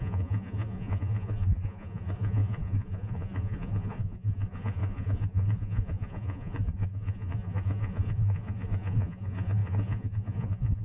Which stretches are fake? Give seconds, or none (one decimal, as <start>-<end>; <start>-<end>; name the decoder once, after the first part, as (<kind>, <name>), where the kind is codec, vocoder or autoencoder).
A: 0.0-10.8 (vocoder, Vocos)